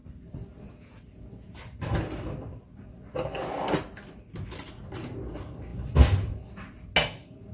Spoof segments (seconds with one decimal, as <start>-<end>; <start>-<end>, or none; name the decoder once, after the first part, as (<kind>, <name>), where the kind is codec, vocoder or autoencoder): none